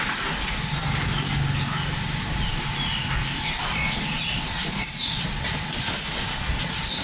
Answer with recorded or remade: recorded